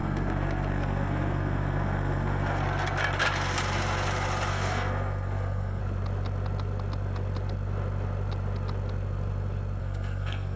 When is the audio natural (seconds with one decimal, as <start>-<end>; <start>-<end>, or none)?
2.6-4.5; 5.8-9.8